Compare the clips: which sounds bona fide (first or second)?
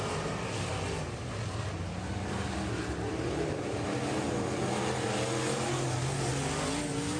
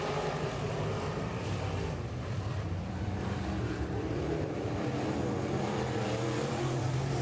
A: first